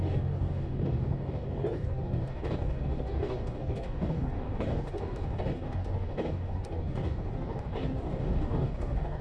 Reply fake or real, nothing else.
fake